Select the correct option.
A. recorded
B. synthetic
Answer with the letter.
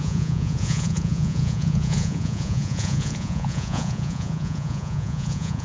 B